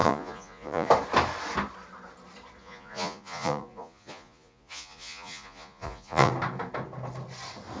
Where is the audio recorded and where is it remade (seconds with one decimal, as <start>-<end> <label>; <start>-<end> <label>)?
0.0-0.9 remade; 0.9-2.6 recorded; 2.6-6.3 remade; 6.3-7.8 recorded